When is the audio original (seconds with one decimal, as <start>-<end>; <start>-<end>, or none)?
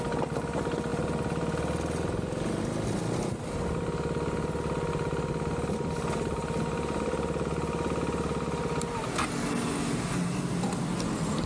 0.0-11.5